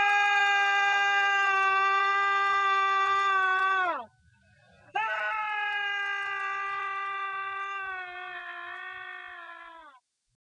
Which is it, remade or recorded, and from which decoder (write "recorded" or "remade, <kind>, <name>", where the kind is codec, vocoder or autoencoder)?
recorded